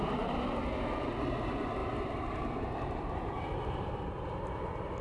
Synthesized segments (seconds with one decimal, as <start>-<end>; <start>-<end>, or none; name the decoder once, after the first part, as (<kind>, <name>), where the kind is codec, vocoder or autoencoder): 0.0-0.6 (vocoder, BigVGAN v2); 1.3-5.0